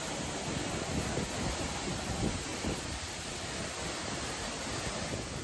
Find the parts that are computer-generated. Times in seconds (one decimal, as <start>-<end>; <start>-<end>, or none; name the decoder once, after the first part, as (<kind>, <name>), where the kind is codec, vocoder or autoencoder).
2.5-3.8 (vocoder, BigVGAN v2)